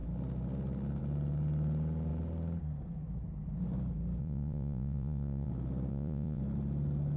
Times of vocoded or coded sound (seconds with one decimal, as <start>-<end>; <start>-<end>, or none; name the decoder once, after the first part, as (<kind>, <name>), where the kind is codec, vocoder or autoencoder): 4.2-5.5 (vocoder, Vocos); 5.9-6.4